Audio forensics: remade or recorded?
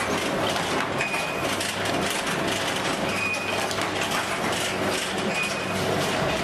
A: recorded